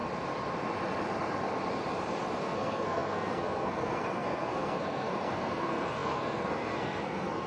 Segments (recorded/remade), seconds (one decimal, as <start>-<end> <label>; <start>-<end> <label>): 0.0-2.4 recorded; 2.4-7.5 remade